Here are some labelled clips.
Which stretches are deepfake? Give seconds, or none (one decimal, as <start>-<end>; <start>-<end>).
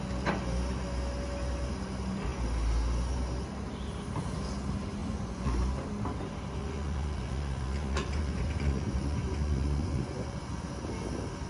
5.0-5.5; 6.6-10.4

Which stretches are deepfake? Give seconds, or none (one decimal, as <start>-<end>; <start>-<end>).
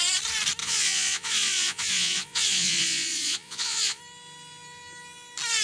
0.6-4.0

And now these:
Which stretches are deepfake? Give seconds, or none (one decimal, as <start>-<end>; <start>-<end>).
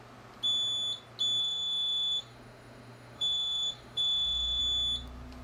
1.4-4.6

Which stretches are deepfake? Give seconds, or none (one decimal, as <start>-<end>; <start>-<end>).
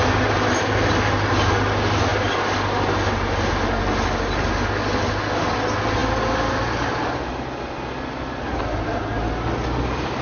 0.0-1.3; 2.1-3.5; 6.0-8.6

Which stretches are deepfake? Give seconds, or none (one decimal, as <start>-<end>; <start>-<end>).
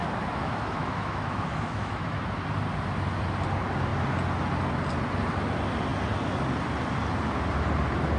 0.0-2.3